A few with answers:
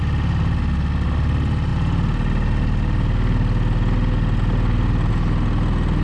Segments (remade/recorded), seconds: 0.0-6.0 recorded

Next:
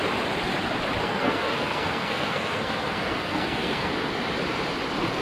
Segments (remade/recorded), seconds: 0.0-1.0 recorded; 1.0-3.9 remade; 3.9-5.2 recorded

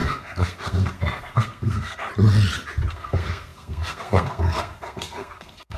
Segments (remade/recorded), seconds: 0.0-2.1 remade; 2.1-2.9 recorded; 2.9-5.8 remade

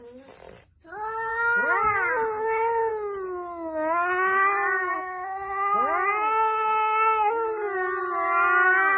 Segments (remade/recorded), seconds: 0.0-9.0 recorded

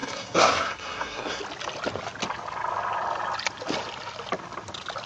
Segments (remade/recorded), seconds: 0.0-1.4 remade; 1.4-5.1 recorded

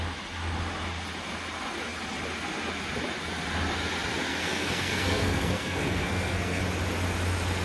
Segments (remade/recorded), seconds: 0.0-4.3 recorded; 4.3-6.6 remade; 6.6-7.6 recorded